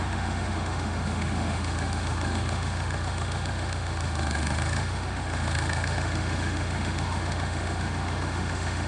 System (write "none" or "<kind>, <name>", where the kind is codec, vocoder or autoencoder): autoencoder, DAC-VAE